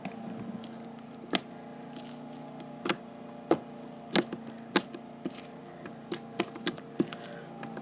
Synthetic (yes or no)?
no